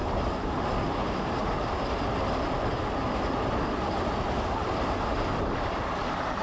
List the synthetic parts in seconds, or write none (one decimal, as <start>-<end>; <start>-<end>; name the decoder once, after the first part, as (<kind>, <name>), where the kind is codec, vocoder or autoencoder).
none